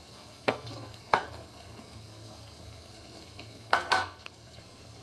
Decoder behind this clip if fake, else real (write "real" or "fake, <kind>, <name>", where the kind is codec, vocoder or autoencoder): fake, codec, SNAC